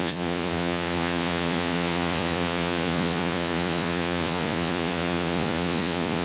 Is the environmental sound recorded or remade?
remade